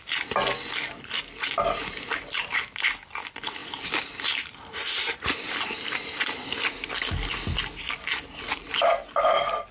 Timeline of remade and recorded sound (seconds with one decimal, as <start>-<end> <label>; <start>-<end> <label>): 0.0-3.6 recorded; 3.6-6.6 remade; 6.6-9.7 recorded